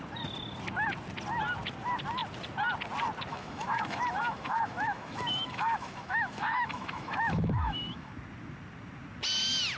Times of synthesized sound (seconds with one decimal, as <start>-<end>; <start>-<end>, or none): 3.3-8.1